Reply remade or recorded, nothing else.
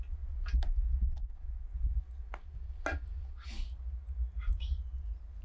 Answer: recorded